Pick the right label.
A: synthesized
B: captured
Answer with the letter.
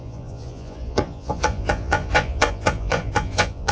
A